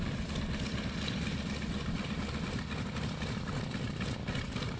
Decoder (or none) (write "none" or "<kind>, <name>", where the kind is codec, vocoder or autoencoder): none